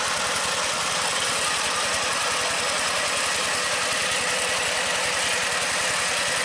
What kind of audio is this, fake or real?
real